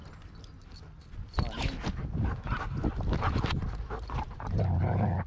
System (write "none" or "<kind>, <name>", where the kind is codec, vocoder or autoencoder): none